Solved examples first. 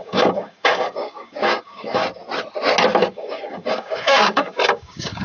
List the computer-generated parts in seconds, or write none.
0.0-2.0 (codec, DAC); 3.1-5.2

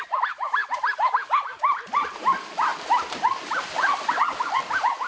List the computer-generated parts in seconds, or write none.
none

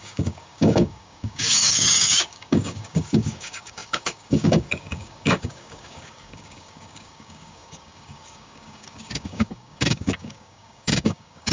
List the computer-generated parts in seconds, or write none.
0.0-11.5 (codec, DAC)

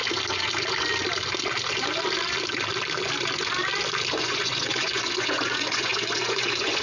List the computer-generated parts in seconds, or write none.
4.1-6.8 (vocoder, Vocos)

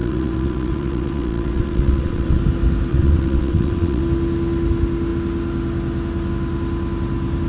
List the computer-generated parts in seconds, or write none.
0.0-2.4 (vocoder, WaveNeXt); 2.9-4.0

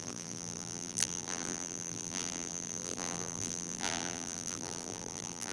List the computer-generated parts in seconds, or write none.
0.0-5.5 (vocoder, BigVGAN v2)